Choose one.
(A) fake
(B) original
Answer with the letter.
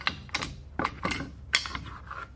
B